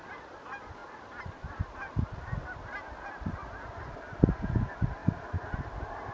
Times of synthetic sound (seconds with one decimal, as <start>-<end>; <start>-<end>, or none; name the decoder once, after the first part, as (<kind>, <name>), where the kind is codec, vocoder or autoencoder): none